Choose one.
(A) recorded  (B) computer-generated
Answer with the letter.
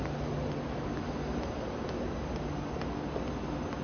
A